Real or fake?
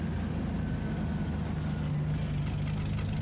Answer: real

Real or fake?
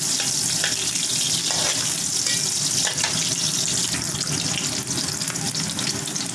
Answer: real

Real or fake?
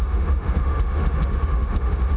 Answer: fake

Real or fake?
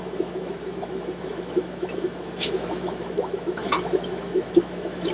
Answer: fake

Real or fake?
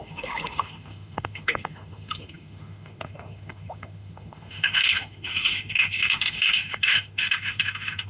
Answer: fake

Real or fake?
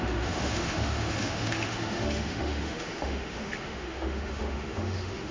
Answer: fake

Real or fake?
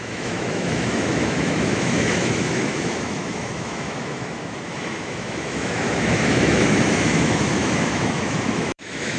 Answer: fake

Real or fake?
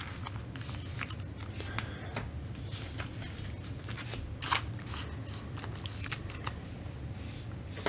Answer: real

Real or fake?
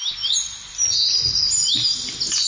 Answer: real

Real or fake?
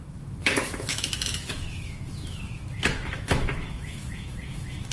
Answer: fake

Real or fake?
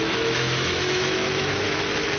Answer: fake